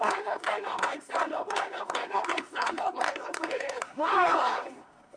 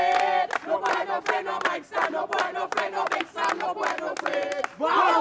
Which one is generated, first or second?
first